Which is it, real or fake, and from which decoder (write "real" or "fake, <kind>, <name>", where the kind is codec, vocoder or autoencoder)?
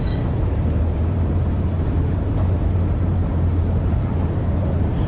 fake, vocoder, BigVGAN v2